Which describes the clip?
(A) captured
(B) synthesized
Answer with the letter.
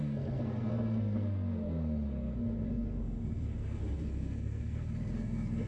B